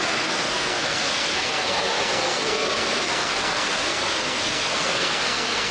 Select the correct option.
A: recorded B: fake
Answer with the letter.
B